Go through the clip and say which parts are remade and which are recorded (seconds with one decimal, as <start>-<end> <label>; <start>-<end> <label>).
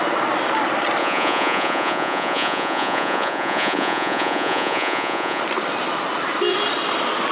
0.0-1.0 recorded; 1.0-5.4 remade; 5.4-7.3 recorded